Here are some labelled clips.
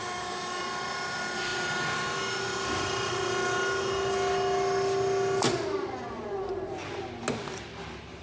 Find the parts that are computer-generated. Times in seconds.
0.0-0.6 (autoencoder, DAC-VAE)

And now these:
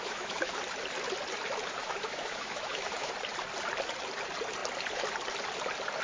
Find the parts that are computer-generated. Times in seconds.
0.0-0.6 (autoencoder, DAC-VAE); 1.8-3.1